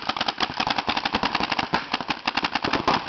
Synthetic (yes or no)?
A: no